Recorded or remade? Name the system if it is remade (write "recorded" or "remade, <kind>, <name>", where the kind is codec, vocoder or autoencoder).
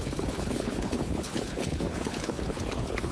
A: remade, codec, HILCodec